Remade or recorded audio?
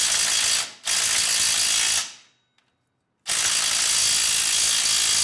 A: recorded